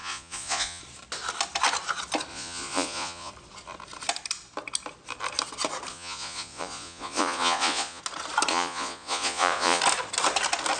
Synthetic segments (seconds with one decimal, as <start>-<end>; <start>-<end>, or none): 0.0-0.8; 2.3-3.3; 5.9-8.0; 8.5-9.8